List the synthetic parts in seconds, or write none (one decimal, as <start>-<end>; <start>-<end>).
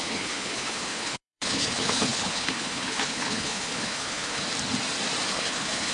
0.0-4.4; 5.3-5.9